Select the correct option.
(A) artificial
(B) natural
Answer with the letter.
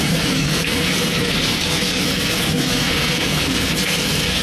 A